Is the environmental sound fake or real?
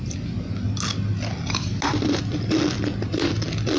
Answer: real